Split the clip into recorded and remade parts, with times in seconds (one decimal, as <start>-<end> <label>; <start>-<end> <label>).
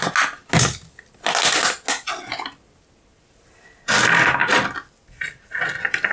0.0-6.1 recorded